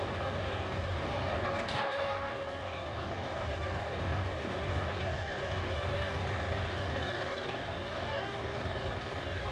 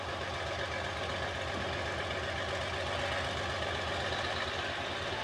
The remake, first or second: first